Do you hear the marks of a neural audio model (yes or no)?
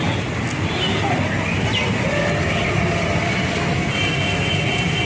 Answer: no